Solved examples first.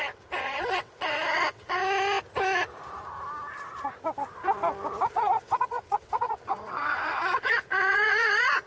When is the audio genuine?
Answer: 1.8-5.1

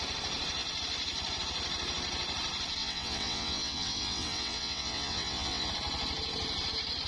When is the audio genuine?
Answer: 0.0-2.8; 5.7-7.1

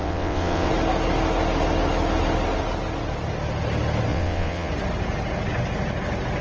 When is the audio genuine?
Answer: 0.7-4.1; 4.7-6.4

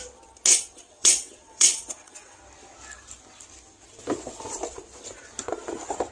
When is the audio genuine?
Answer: 0.0-0.5; 2.4-6.1

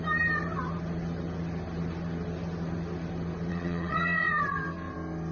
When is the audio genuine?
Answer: 0.0-3.5; 4.4-5.3

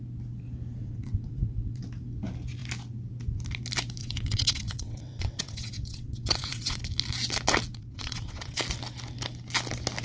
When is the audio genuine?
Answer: 0.0-0.8; 1.8-4.0; 6.8-7.7; 8.6-10.0

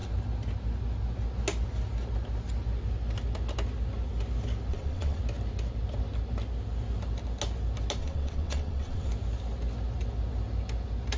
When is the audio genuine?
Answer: 0.0-4.7; 5.2-8.0; 9.1-11.2

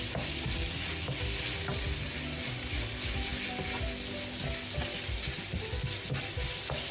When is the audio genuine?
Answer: 0.0-6.9